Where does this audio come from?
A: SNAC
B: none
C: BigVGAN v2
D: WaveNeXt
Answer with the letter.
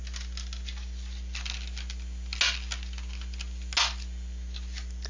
B